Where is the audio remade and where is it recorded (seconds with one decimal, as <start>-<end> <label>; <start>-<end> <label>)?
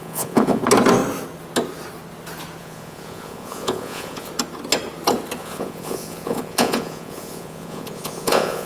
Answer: 0.0-0.6 remade; 0.6-2.6 recorded; 2.6-4.3 remade; 4.3-5.4 recorded; 5.4-8.7 remade